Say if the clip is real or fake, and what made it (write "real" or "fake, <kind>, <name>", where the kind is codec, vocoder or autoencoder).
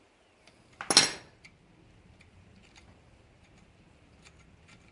real